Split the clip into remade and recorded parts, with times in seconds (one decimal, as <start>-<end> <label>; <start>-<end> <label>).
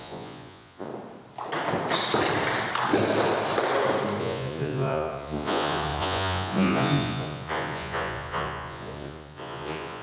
0.0-0.9 remade; 0.9-4.2 recorded; 4.2-10.0 remade